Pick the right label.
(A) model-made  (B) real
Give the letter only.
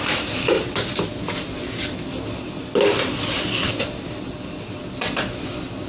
B